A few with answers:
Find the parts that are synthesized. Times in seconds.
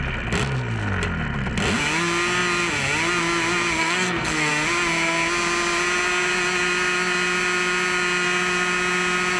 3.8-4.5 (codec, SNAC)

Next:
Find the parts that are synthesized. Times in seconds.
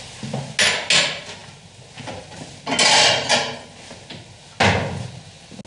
none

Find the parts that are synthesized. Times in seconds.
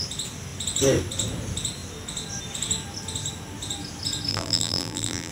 4.3-5.3 (vocoder, BigVGAN v2)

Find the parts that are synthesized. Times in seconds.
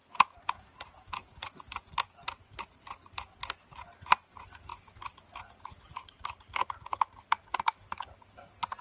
0.0-1.9 (vocoder, Vocos)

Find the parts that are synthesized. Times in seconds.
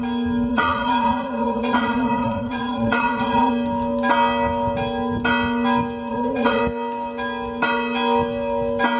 0.5-3.5 (vocoder, Vocos); 6.1-6.6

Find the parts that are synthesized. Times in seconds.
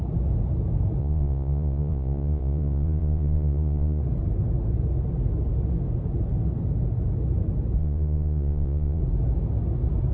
1.0-4.0 (vocoder, Vocos); 7.8-9.0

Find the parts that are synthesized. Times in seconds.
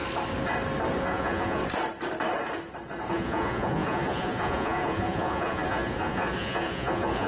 1.0-1.6 (vocoder, Vocos); 3.1-7.3